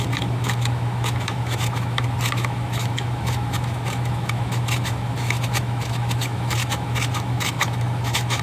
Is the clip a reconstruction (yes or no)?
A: yes